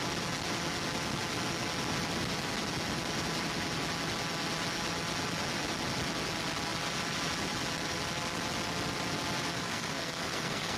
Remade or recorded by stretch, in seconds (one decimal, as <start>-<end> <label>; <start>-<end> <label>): 0.0-9.5 recorded; 9.5-10.8 remade